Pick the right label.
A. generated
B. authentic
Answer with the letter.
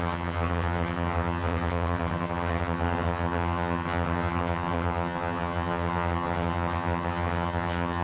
A